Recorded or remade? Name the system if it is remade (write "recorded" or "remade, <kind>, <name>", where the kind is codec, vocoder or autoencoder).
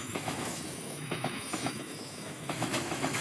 remade, autoencoder, DAC-VAE